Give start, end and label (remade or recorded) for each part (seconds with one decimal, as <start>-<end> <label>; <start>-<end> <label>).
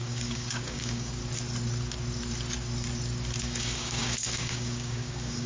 0.0-1.2 remade; 1.2-3.4 recorded; 3.4-5.5 remade